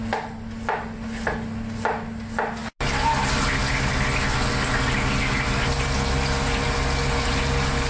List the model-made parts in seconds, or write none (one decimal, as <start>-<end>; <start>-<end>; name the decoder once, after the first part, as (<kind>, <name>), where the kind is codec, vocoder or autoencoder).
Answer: none